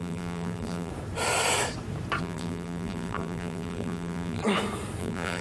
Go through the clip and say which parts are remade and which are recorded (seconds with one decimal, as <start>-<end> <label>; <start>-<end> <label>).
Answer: 0.0-0.9 remade; 0.9-2.2 recorded; 2.2-4.4 remade; 4.4-5.0 recorded; 5.0-5.4 remade